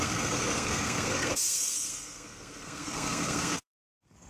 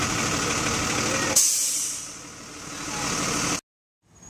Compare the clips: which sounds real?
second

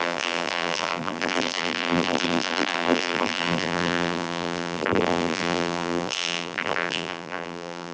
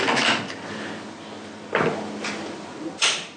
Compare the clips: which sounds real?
second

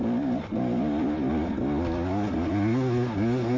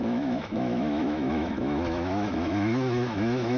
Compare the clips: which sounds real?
first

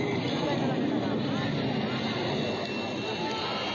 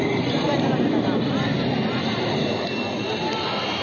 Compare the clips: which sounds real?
first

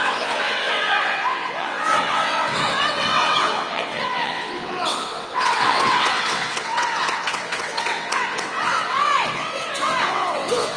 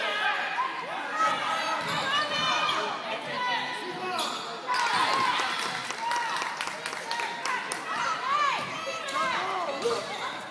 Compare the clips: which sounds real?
second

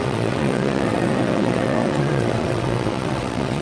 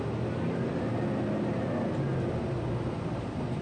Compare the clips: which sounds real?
second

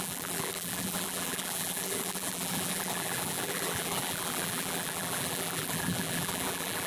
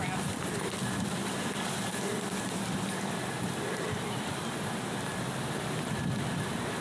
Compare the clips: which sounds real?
second